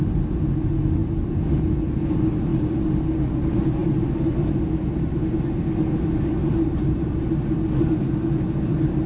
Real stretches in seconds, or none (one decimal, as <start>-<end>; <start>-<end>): 0.0-6.4; 7.2-9.1